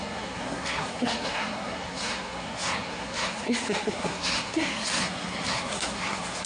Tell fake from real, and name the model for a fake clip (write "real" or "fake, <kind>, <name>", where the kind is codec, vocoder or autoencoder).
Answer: fake, codec, SNAC